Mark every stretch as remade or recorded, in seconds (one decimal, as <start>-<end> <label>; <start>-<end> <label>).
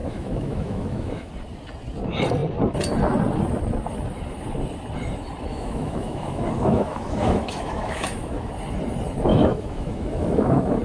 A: 0.0-1.3 remade; 1.3-5.5 recorded; 5.5-8.5 remade; 8.5-9.3 recorded; 9.3-10.8 remade